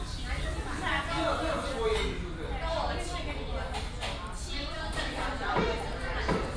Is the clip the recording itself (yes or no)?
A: yes